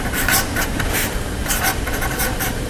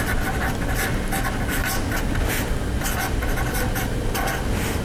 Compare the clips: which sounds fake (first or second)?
first